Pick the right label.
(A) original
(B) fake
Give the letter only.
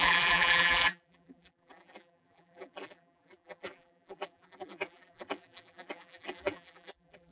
B